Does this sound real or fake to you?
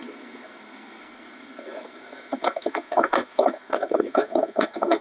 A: fake